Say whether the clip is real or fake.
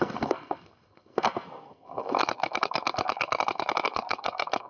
fake